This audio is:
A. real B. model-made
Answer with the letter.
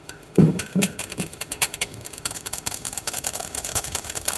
B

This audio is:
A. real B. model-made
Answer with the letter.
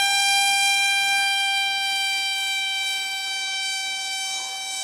B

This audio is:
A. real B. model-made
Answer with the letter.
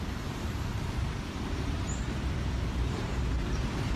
B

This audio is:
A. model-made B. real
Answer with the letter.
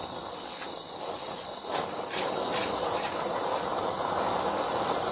B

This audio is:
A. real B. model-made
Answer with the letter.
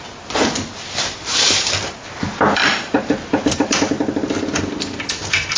A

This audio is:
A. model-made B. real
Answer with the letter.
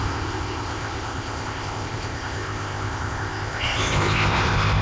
A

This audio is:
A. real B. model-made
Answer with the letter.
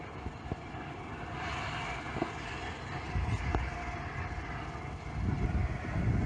A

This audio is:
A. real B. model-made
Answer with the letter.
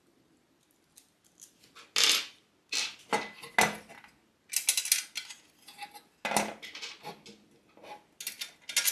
A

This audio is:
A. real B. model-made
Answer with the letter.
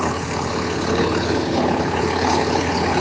B